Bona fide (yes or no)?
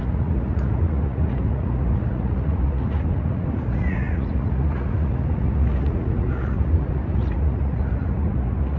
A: no